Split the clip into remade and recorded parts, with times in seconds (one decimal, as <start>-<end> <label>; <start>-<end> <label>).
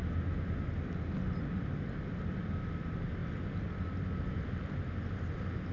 0.0-5.7 recorded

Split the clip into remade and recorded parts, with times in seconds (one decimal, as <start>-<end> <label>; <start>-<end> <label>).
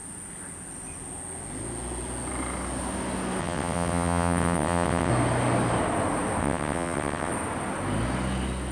0.0-3.4 recorded; 3.4-5.1 remade; 5.1-6.4 recorded; 6.4-7.3 remade; 7.3-8.7 recorded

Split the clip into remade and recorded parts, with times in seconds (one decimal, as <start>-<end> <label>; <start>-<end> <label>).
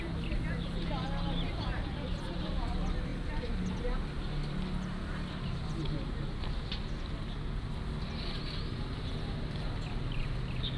0.0-10.8 recorded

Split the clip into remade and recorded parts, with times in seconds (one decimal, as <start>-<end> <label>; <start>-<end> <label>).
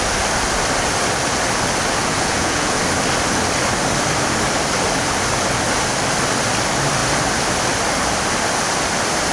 0.0-2.0 recorded; 2.0-2.8 remade; 2.8-9.3 recorded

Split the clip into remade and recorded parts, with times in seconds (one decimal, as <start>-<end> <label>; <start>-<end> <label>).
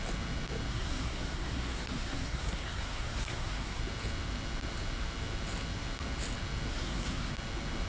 0.0-0.7 recorded; 0.7-3.8 remade; 3.8-6.7 recorded; 6.7-7.3 remade; 7.3-7.9 recorded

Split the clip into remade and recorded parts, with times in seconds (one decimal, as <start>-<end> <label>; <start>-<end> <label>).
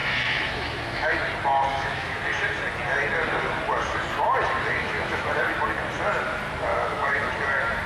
0.0-1.2 remade; 1.2-1.7 recorded; 1.7-2.2 remade; 2.2-4.8 recorded; 4.8-5.4 remade; 5.4-6.7 recorded; 6.7-7.3 remade; 7.3-7.9 recorded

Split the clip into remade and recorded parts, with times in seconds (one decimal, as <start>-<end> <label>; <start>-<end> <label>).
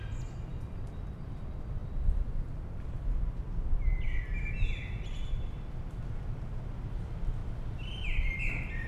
0.0-7.4 recorded; 7.4-8.3 remade; 8.3-8.9 recorded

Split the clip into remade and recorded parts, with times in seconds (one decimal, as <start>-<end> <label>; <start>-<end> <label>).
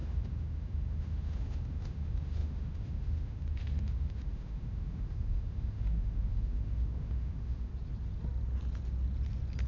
0.0-7.7 remade; 7.7-9.7 recorded